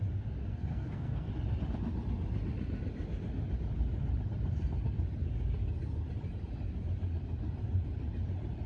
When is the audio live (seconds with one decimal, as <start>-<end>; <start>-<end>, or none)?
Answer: 0.0-0.4; 1.3-8.7